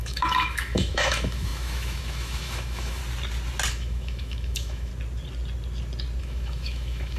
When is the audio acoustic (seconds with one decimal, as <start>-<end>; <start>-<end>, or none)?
3.0-3.7; 4.9-6.2